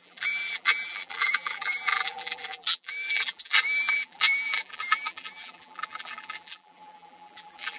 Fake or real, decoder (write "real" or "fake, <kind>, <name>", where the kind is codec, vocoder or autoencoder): fake, vocoder, BigVGAN v2